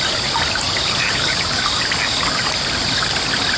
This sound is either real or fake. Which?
real